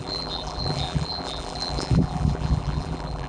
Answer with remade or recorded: remade